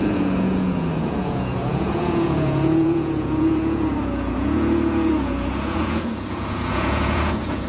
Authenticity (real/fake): fake